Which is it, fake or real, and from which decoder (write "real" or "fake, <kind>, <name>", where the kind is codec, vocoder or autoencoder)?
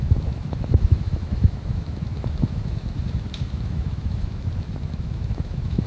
fake, autoencoder, DAC-VAE